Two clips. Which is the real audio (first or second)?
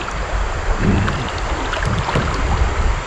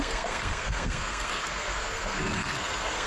first